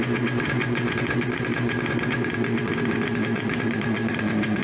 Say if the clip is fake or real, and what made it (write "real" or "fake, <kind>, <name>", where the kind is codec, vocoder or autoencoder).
fake, vocoder, Vocos